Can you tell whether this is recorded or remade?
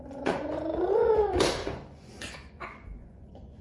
remade